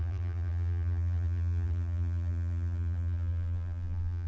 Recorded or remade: remade